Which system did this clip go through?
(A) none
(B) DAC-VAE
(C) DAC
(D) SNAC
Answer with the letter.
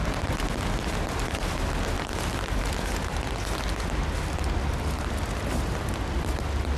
A